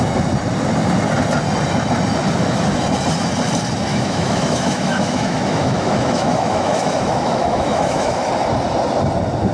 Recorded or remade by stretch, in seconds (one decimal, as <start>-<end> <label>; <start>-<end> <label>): 0.0-3.9 recorded; 3.9-8.3 remade; 8.3-9.5 recorded